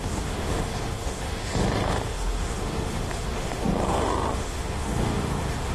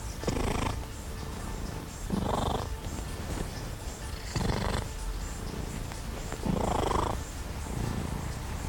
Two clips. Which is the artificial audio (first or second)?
first